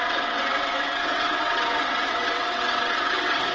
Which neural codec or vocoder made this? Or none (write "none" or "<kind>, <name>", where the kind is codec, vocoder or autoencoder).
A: vocoder, WaveNeXt